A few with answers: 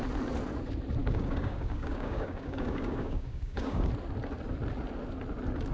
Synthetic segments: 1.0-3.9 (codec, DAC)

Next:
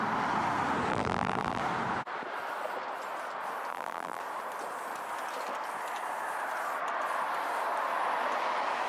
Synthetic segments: 0.9-1.6 (vocoder, BigVGAN v2); 3.7-4.2

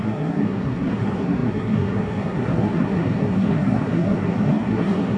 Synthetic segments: 0.0-5.2 (codec, SNAC)

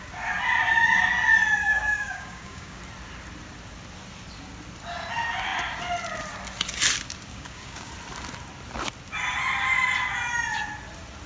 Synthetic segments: 1.6-2.8 (codec, DAC); 7.3-7.9

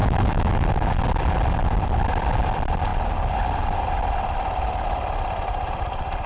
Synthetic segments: 0.0-1.0 (autoencoder, DAC-VAE)